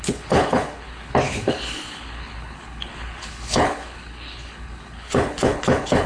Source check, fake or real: fake